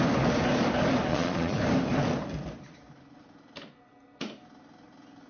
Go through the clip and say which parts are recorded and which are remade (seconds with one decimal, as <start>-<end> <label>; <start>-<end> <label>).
0.0-1.1 recorded; 1.1-1.6 remade; 1.6-5.3 recorded